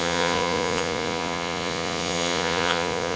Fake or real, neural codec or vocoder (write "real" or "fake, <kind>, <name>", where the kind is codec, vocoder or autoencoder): fake, vocoder, Vocos